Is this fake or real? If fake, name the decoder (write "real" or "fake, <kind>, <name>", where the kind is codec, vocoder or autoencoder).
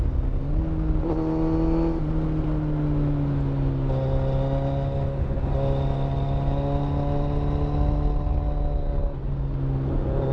real